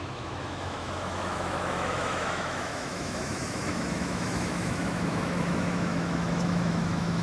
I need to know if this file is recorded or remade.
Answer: remade